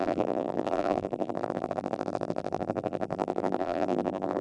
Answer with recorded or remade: remade